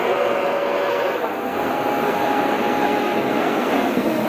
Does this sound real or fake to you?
fake